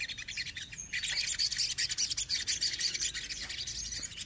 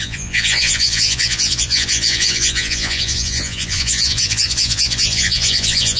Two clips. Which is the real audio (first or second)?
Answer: first